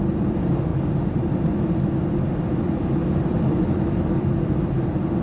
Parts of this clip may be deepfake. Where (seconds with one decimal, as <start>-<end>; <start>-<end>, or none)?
none